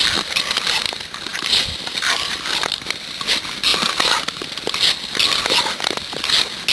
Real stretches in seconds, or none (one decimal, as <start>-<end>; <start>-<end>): 0.0-1.3; 3.1-6.7